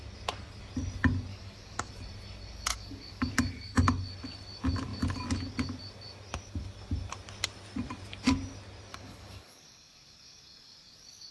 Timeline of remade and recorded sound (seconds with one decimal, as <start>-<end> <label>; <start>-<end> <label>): 0.0-1.3 recorded; 1.3-1.9 remade; 1.9-2.7 recorded; 2.7-3.3 remade; 3.3-8.9 recorded; 8.9-11.3 remade